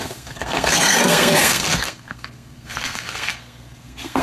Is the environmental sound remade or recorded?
remade